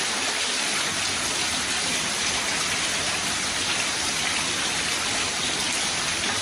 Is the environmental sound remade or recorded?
remade